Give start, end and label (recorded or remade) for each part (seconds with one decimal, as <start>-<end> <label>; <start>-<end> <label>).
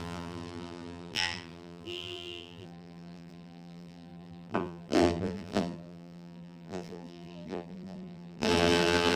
0.0-9.2 remade